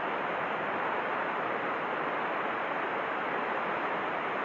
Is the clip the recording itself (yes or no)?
yes